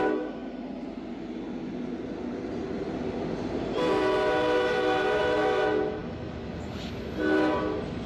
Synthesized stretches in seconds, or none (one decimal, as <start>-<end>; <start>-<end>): none